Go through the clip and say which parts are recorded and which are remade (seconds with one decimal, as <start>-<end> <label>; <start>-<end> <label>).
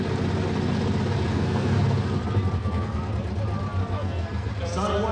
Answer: 0.0-1.3 recorded; 1.3-1.8 remade; 1.8-2.6 recorded; 2.6-3.1 remade; 3.1-3.8 recorded; 3.8-4.5 remade; 4.5-5.1 recorded